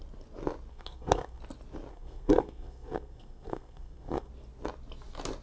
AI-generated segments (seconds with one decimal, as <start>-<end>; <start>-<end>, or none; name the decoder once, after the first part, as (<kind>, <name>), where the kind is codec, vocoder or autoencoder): 0.7-1.4 (codec, SNAC); 1.9-4.3